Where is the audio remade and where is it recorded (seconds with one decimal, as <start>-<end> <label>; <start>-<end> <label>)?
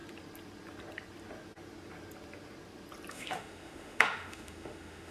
0.0-3.1 recorded; 3.1-5.1 remade